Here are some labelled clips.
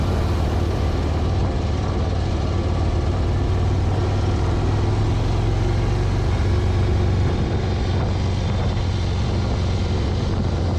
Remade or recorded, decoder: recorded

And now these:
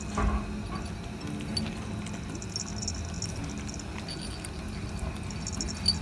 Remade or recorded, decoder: recorded